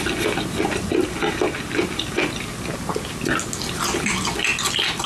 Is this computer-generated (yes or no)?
no